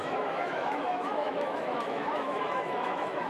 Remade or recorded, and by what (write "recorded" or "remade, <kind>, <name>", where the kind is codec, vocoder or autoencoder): remade, autoencoder, DAC-VAE